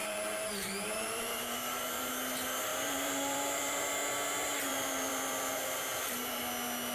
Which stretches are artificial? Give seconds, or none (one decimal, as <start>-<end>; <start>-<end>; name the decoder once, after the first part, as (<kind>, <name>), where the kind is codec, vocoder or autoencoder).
0.0-2.1 (vocoder, BigVGAN v2); 2.7-3.9; 4.7-6.4